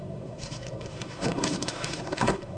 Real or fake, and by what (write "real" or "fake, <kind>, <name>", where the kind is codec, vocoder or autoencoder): fake, codec, SNAC